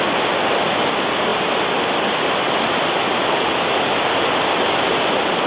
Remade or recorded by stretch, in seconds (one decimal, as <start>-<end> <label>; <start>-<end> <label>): 0.0-5.5 recorded